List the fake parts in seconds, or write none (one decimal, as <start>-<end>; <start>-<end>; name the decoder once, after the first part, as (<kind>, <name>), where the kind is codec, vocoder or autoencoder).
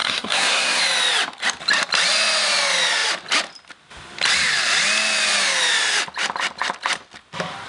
0.0-0.8 (codec, SNAC)